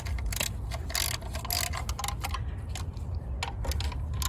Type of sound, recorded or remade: recorded